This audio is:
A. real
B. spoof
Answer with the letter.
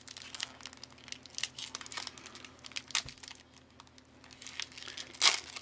A